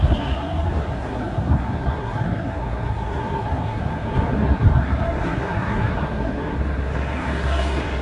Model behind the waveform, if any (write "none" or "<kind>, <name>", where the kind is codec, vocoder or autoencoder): codec, SNAC